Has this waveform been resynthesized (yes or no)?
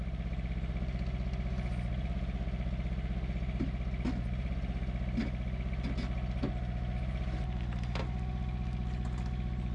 no